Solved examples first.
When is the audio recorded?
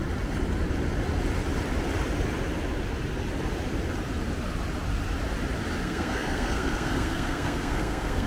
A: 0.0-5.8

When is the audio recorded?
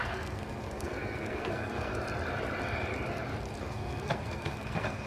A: 1.9-3.6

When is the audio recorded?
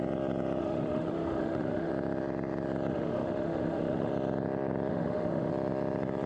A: 0.0-0.6; 1.9-2.9; 4.1-4.9; 5.5-6.3